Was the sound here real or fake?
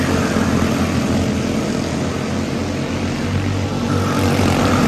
real